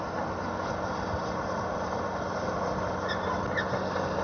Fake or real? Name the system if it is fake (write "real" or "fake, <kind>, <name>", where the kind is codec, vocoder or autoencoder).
real